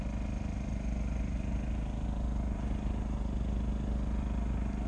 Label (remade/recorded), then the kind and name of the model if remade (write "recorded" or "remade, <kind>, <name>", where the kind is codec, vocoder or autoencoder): recorded